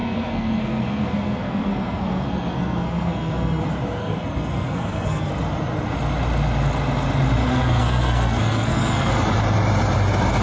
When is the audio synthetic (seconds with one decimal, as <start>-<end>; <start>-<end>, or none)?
0.0-3.6; 4.0-5.3; 7.5-9.1